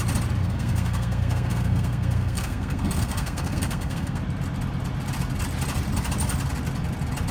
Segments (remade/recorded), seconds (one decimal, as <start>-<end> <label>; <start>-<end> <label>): 0.0-0.4 recorded; 0.4-4.2 remade; 4.2-7.3 recorded